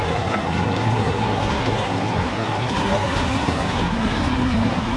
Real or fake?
fake